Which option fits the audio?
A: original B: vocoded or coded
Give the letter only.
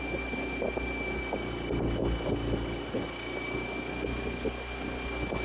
A